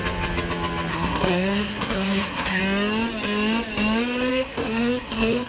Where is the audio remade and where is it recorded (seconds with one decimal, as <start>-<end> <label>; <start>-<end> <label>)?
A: 0.0-0.9 recorded; 0.9-2.6 remade; 2.6-4.3 recorded; 4.3-5.5 remade